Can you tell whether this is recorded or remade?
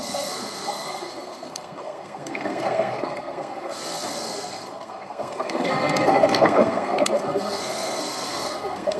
remade